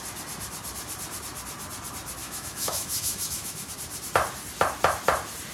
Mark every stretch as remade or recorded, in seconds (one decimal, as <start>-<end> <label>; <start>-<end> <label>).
0.0-2.2 recorded; 2.2-3.7 remade; 3.7-5.5 recorded